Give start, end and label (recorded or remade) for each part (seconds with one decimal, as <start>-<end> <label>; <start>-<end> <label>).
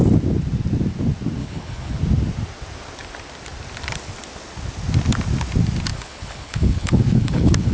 0.0-1.4 recorded; 1.4-2.0 remade; 2.0-5.9 recorded; 5.9-7.7 remade